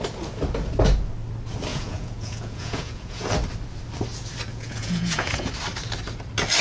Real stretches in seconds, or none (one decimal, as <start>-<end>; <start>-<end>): 0.0-1.7; 3.3-4.5; 5.5-6.6